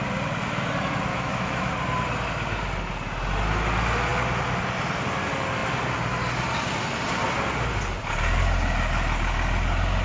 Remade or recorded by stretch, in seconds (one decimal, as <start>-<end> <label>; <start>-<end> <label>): 0.0-1.1 recorded; 1.1-1.7 remade; 1.7-10.0 recorded